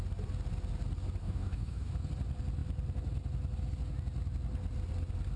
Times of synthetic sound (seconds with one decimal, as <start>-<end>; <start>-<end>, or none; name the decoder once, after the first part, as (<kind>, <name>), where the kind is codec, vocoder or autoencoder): 1.2-1.9 (codec, DAC)